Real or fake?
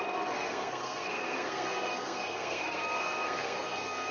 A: fake